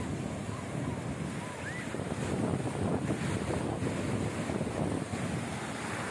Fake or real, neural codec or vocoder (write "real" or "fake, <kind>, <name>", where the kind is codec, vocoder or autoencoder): real